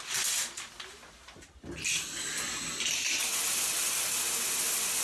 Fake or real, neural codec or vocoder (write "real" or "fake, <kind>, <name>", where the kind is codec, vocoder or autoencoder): real